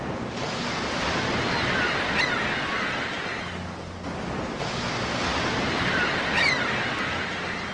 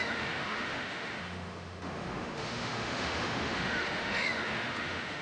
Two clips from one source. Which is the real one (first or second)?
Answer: first